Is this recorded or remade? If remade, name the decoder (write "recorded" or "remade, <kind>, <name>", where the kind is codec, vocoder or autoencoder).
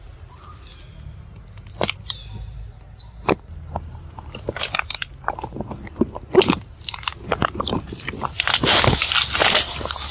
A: recorded